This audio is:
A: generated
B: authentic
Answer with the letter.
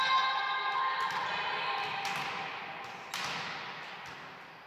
B